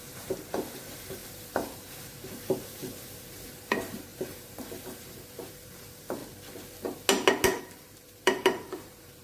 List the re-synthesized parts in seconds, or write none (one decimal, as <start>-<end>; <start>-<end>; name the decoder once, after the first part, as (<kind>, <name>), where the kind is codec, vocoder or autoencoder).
0.0-6.2 (vocoder, BigVGAN v2); 7.6-9.2